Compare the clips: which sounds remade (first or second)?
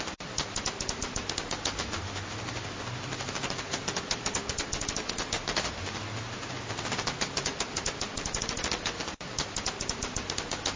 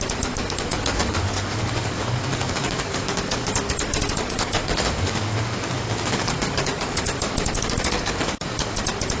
second